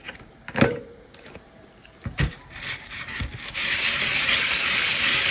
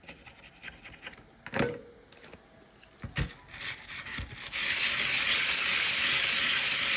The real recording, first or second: second